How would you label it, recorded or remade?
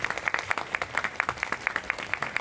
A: recorded